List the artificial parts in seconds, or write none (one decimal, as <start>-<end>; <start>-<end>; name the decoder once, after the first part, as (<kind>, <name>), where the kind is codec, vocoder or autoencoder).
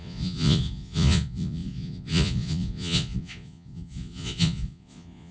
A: 0.0-5.3 (vocoder, Vocos)